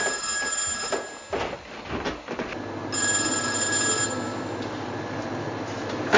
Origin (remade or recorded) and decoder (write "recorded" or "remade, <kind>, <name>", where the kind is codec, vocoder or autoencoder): recorded